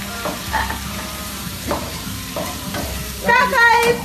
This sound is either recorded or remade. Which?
remade